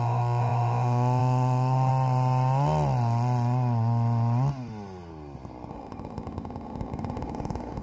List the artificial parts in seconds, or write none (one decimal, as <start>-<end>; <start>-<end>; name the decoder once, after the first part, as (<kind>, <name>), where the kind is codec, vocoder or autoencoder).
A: 0.0-1.9 (autoencoder, DAC-VAE); 5.7-7.8